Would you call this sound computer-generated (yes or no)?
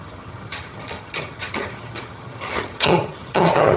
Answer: yes